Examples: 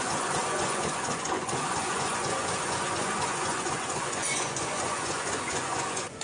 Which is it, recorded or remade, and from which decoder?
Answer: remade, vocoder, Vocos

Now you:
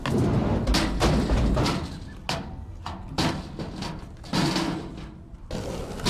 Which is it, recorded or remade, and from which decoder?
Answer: recorded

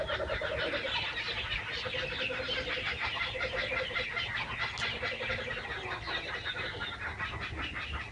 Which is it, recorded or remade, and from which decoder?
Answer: recorded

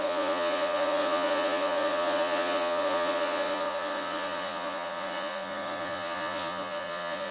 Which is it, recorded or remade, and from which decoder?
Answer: remade, vocoder, Vocos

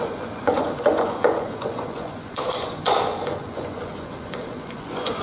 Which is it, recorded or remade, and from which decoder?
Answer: remade, vocoder, Vocos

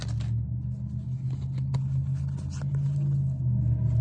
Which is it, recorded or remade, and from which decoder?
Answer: recorded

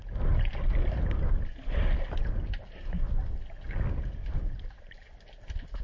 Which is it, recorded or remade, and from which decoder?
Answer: recorded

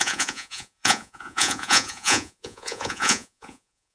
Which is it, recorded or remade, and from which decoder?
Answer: remade, vocoder, Vocos